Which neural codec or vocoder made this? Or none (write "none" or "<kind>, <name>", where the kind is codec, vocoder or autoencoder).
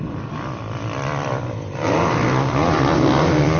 vocoder, BigVGAN v2